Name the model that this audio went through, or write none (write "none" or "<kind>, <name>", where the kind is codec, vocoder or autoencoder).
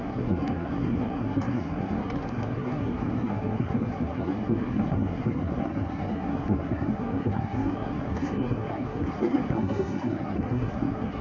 codec, SNAC